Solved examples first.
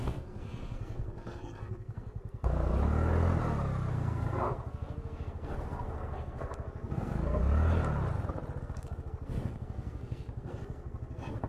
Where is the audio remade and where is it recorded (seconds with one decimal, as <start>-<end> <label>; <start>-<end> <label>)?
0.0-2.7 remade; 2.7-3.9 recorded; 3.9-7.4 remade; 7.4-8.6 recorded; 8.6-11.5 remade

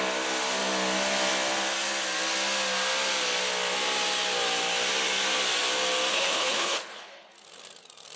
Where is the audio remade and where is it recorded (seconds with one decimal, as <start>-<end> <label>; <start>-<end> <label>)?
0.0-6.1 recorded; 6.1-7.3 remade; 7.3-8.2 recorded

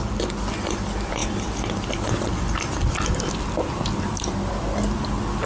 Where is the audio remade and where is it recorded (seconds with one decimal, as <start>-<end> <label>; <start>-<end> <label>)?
0.0-5.5 recorded

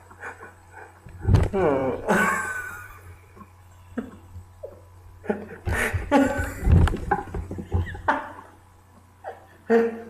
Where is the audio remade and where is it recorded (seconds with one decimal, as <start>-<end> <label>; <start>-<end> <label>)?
0.0-1.8 recorded; 1.8-3.6 remade; 3.6-10.1 recorded

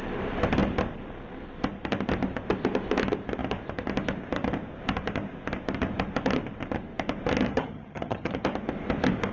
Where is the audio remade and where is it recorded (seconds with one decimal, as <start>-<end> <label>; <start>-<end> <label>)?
0.0-7.5 recorded; 7.5-8.3 remade; 8.3-9.3 recorded

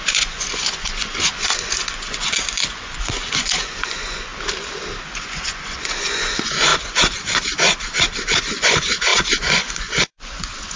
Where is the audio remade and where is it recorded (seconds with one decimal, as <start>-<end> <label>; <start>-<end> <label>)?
0.0-4.3 remade; 4.3-5.1 recorded; 5.1-6.7 remade; 6.7-8.4 recorded; 8.4-10.8 remade